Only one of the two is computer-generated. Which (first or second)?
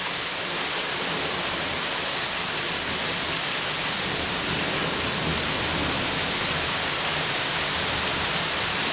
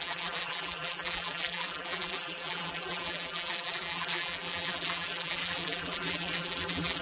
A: second